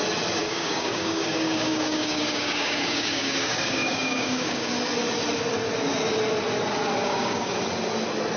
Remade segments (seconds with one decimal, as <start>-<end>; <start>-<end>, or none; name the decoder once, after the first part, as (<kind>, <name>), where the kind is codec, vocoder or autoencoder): 0.4-4.7 (codec, DAC); 7.0-7.5